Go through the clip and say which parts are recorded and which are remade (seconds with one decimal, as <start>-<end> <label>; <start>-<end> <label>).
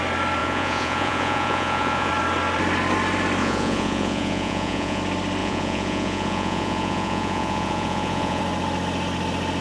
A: 0.0-0.4 recorded; 0.4-2.1 remade; 2.1-3.4 recorded; 3.4-5.0 remade; 5.0-5.4 recorded; 5.4-8.4 remade; 8.4-9.6 recorded